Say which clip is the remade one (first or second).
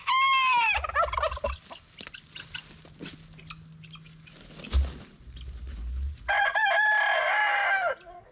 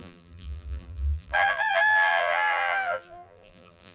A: second